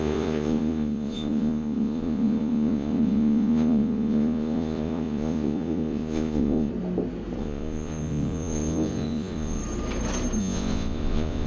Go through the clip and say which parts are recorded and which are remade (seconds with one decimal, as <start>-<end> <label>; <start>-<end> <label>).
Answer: 0.0-6.7 remade; 6.7-7.4 recorded; 7.4-9.6 remade; 9.6-10.4 recorded; 10.4-11.5 remade